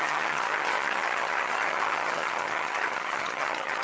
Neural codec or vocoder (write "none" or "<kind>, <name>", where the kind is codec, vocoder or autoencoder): vocoder, HiFi-GAN